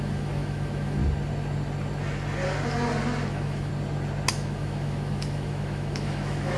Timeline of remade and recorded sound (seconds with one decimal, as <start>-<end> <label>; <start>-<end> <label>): 0.0-1.0 remade; 1.0-3.3 recorded; 3.3-3.7 remade; 3.7-4.3 recorded; 4.3-6.6 remade